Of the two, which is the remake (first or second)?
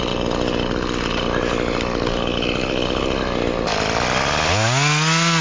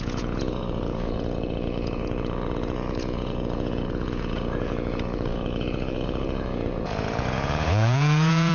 second